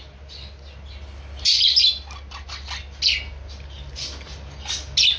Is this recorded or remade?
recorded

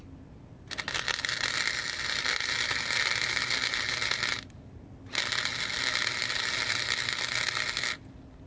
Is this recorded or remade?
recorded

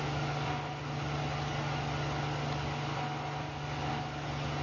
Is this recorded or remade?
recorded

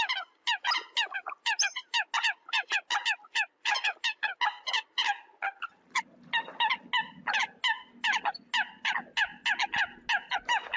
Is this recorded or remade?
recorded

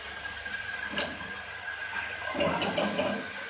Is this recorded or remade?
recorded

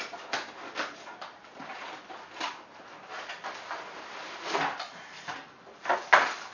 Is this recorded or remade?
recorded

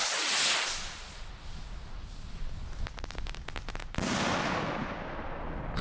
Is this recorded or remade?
recorded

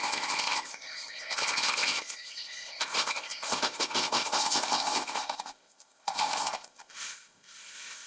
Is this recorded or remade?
remade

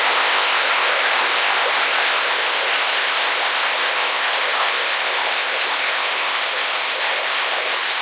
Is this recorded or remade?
remade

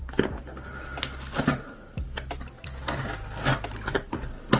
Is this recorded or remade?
recorded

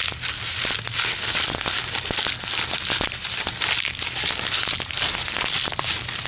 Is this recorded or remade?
recorded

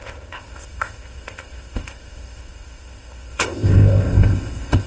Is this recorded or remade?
remade